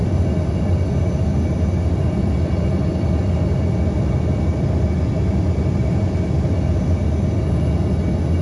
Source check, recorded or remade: recorded